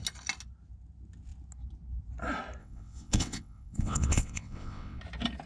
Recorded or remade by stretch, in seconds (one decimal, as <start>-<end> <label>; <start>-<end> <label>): 0.0-2.6 recorded; 2.6-5.0 remade; 5.0-5.5 recorded